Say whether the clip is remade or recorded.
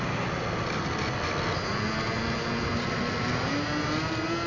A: recorded